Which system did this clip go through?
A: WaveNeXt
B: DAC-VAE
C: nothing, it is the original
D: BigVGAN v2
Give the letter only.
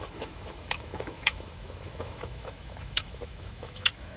B